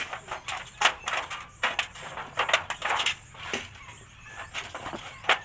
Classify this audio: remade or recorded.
recorded